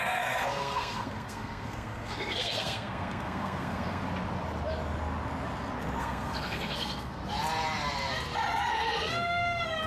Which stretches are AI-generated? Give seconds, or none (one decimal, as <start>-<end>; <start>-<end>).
0.0-4.0; 6.0-7.2; 8.7-9.9